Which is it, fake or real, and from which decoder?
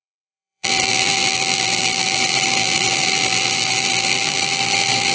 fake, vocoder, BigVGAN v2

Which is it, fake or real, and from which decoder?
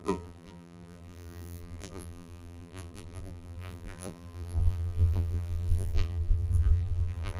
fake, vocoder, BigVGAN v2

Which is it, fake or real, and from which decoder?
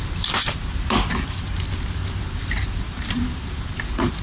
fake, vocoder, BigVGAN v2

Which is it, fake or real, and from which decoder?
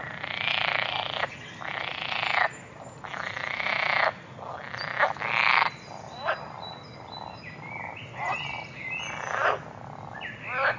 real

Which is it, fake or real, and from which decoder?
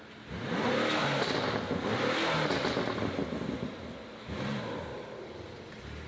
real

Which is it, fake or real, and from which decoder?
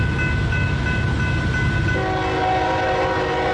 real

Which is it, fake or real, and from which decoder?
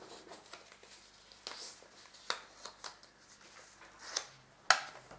real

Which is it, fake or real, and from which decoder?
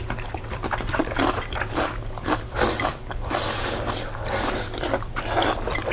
fake, vocoder, BigVGAN v2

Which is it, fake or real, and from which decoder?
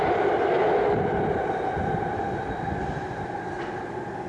real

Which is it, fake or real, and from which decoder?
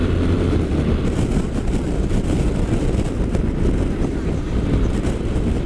real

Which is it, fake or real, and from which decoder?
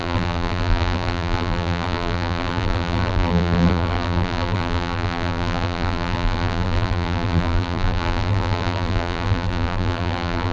fake, vocoder, BigVGAN v2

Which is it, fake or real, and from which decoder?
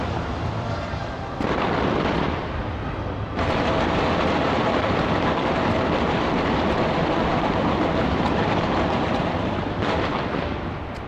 fake, vocoder, BigVGAN v2